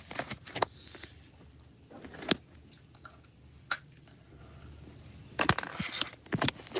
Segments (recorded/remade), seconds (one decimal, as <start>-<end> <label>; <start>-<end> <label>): 0.0-6.8 recorded